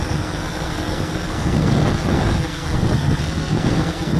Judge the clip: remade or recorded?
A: remade